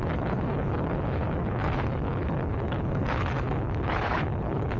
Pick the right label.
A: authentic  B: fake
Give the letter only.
B